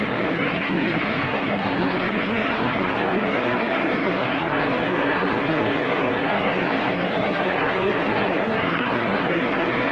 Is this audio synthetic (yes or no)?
yes